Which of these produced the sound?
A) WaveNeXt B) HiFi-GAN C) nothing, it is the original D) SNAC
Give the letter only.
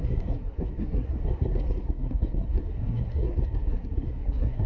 D